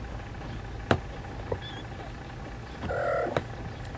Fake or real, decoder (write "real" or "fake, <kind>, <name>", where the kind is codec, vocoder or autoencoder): real